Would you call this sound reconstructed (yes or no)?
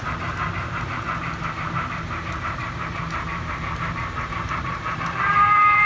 yes